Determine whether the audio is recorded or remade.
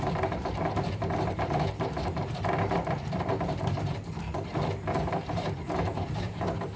remade